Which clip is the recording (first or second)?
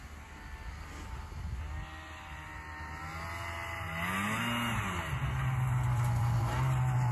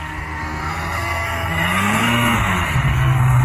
first